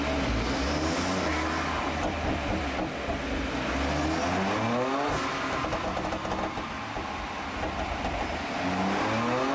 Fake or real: real